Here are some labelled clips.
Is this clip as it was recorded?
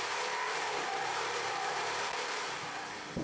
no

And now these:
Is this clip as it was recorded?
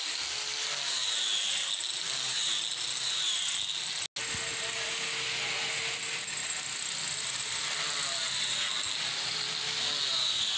yes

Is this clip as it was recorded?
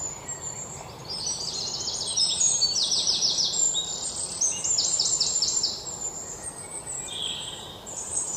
no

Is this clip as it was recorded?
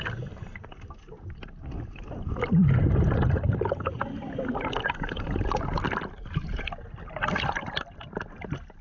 yes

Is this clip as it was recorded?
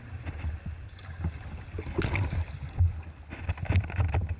yes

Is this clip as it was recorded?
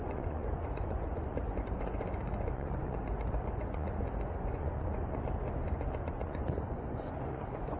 no